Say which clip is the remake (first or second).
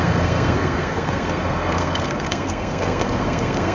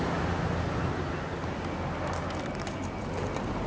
first